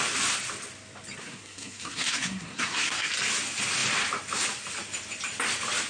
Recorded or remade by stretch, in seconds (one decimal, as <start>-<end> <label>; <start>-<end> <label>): 0.0-1.2 recorded; 1.2-3.1 remade; 3.1-5.9 recorded